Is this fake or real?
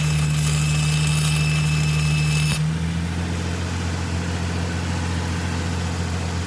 real